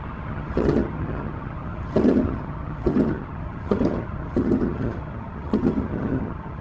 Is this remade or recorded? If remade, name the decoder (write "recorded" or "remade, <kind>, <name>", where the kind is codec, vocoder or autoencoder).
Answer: remade, vocoder, HiFi-GAN